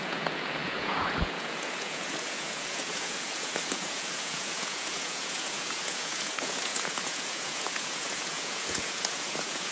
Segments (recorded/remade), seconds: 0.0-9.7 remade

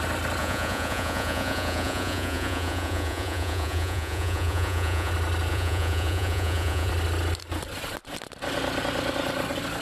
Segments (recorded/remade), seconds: 0.0-0.4 recorded; 0.4-5.1 remade; 5.1-5.5 recorded; 5.5-6.9 remade; 6.9-9.8 recorded

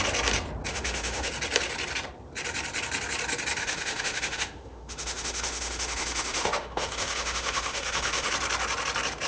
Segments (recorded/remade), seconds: 0.0-0.7 recorded; 0.7-1.3 remade; 1.3-3.6 recorded; 3.6-8.3 remade; 8.3-9.3 recorded

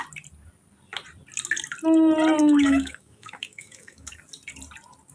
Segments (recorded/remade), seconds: 0.0-2.4 recorded; 2.4-4.1 remade; 4.1-5.1 recorded

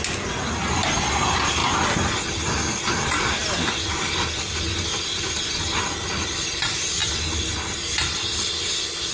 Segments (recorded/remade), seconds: 0.0-9.1 recorded

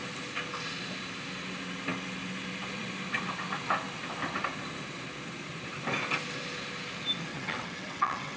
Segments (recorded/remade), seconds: 0.0-7.3 recorded; 7.3-8.4 remade

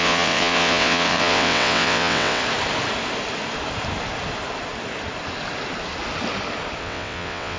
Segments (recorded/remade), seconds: 0.0-2.4 remade; 2.4-6.8 recorded; 6.8-7.6 remade

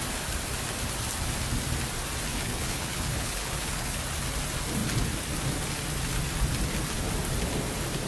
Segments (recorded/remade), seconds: 0.0-2.3 recorded; 2.3-4.0 remade; 4.0-8.1 recorded